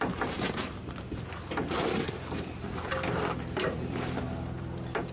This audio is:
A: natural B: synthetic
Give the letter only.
B